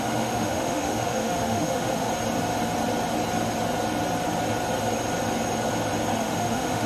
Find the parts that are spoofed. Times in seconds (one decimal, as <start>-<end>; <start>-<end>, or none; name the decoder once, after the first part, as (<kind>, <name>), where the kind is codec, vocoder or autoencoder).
0.0-2.1 (autoencoder, DAC-VAE); 6.2-6.9